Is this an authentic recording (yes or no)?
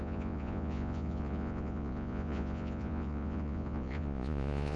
no